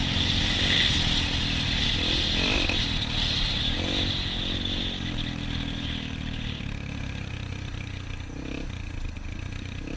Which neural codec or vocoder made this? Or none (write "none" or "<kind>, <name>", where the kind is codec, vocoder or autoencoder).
none